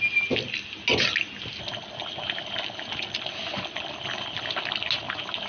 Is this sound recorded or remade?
recorded